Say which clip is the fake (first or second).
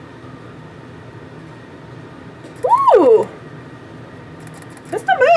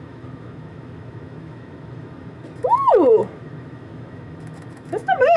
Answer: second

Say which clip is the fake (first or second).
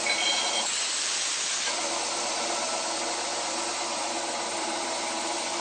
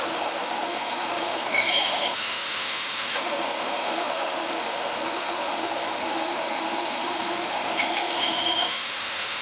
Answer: second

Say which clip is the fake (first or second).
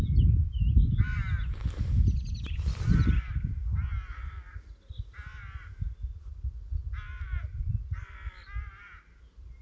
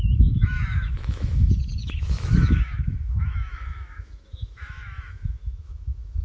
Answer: second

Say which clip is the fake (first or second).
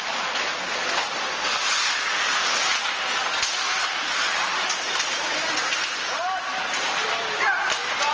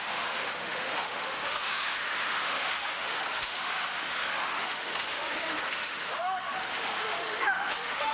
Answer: second